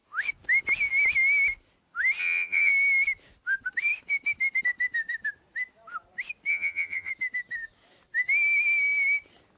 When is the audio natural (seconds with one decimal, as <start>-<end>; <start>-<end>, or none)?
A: 0.0-2.2; 2.7-6.5; 7.1-9.6